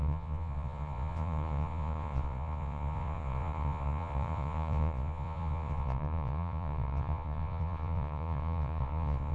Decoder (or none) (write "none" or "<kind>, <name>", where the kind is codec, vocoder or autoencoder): vocoder, Vocos